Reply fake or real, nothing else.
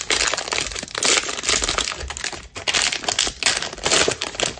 real